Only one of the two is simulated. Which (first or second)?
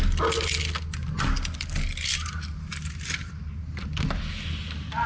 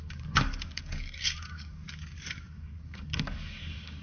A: second